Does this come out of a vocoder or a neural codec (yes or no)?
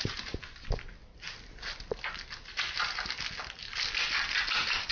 no